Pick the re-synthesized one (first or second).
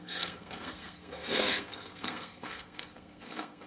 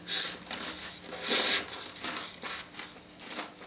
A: first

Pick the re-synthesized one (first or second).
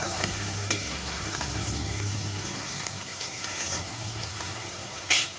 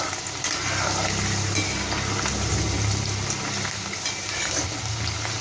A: first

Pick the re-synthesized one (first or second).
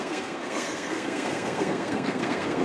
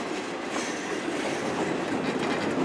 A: first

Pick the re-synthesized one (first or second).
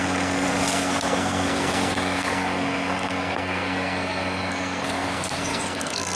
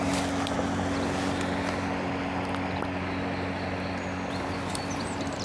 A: first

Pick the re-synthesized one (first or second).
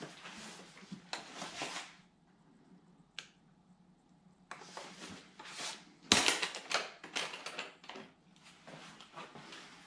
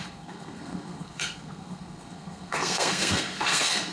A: second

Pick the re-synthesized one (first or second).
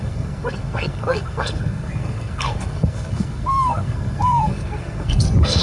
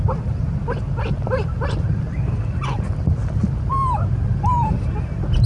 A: first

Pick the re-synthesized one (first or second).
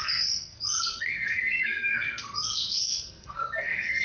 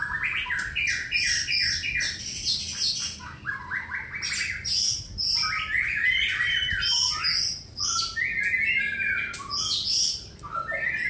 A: first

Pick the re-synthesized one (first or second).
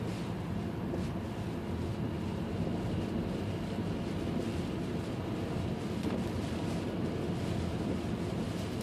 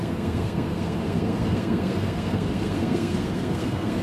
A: second